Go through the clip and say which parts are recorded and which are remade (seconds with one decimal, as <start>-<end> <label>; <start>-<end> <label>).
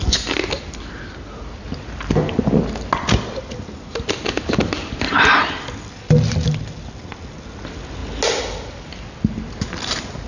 0.0-10.3 recorded